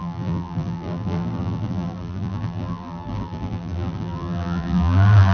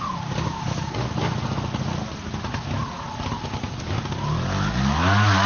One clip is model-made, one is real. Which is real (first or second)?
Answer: second